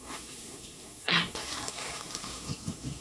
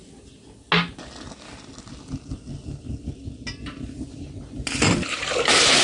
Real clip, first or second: second